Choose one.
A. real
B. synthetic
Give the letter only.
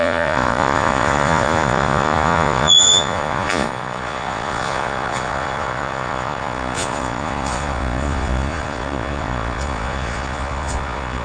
B